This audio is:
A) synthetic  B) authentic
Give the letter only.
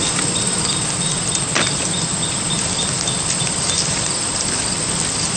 B